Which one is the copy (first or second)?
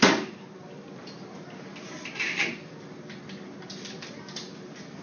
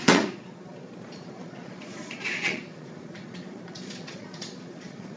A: second